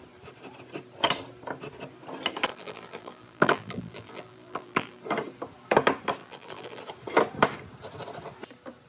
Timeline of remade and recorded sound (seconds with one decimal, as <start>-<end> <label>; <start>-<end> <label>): 0.0-2.5 recorded; 2.5-5.0 remade; 5.0-6.2 recorded; 6.2-6.8 remade; 6.8-8.9 recorded